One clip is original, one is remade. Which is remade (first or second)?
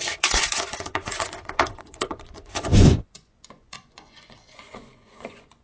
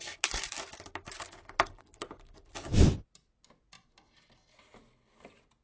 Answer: first